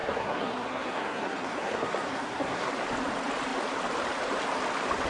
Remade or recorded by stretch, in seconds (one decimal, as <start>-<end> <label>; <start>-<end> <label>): 0.0-2.7 remade; 2.7-5.1 recorded